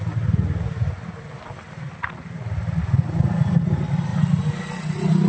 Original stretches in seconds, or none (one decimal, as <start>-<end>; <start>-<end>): 0.0-5.3